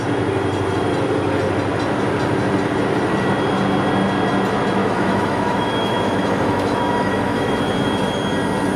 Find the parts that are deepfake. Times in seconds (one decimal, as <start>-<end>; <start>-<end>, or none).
4.8-7.6